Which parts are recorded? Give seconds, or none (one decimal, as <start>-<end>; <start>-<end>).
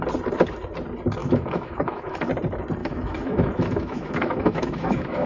0.0-1.2; 2.3-2.8